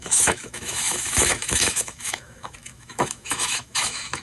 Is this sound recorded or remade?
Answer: remade